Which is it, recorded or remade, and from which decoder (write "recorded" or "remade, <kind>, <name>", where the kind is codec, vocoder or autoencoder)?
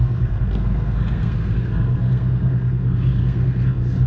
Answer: remade, codec, SNAC